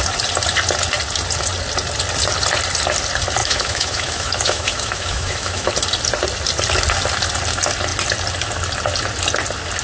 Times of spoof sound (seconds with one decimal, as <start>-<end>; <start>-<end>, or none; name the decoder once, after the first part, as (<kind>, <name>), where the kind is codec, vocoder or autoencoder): 3.4-5.7 (autoencoder, DAC-VAE)